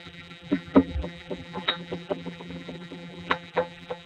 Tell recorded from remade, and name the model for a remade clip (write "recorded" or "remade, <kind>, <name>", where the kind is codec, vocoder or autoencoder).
remade, vocoder, BigVGAN v2